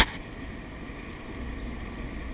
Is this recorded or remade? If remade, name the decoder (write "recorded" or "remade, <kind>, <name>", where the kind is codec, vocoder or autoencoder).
recorded